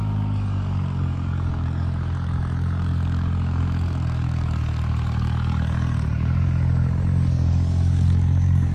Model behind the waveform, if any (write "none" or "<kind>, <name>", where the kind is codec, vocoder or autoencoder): codec, DAC